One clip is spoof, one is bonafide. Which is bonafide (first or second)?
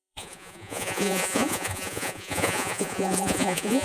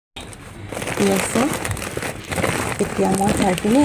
second